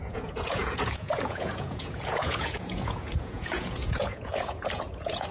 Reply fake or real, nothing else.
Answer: fake